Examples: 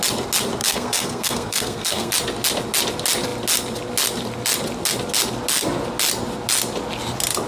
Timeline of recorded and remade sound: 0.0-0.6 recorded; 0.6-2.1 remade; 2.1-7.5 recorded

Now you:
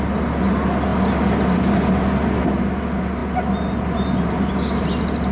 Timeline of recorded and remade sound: 0.0-5.3 recorded